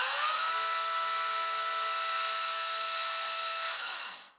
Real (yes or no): no